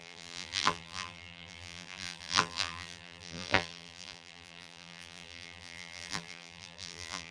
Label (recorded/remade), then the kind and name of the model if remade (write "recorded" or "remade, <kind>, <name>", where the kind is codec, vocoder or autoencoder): remade, vocoder, BigVGAN v2